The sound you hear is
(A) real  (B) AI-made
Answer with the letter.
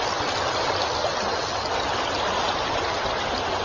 A